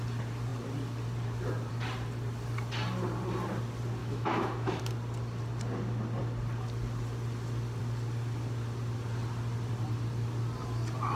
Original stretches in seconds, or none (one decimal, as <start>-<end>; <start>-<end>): 0.0-4.0; 4.8-11.2